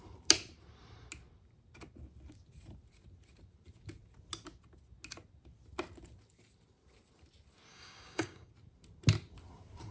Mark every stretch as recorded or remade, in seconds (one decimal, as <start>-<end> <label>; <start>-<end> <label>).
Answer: 0.0-7.7 recorded; 7.7-8.5 remade; 8.5-9.9 recorded